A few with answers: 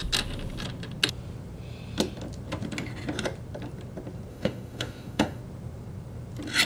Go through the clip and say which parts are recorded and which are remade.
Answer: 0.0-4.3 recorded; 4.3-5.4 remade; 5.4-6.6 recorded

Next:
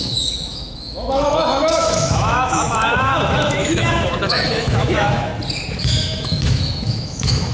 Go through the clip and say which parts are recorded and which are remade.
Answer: 0.0-5.3 remade; 5.3-5.8 recorded; 5.8-7.5 remade

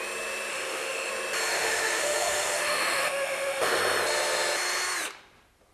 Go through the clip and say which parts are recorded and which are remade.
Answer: 0.0-0.5 recorded; 0.5-1.1 remade; 1.1-1.5 recorded; 1.5-3.8 remade; 3.8-5.7 recorded

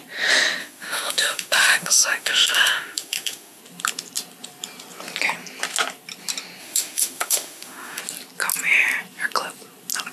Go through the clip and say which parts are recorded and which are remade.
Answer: 0.0-0.6 recorded; 0.6-3.6 remade; 3.6-6.6 recorded; 6.6-8.0 remade; 8.0-10.1 recorded

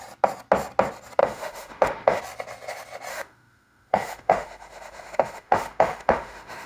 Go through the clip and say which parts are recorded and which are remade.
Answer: 0.0-1.2 recorded; 1.2-2.2 remade; 2.2-3.1 recorded; 3.1-6.7 remade

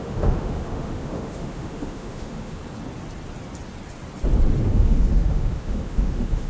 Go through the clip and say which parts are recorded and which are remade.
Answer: 0.0-2.6 remade; 2.6-4.6 recorded; 4.6-6.5 remade

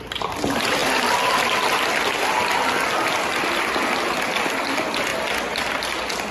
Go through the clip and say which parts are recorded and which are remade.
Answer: 0.0-6.3 recorded